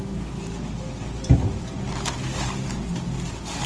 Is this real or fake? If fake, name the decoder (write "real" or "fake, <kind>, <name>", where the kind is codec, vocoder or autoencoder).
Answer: real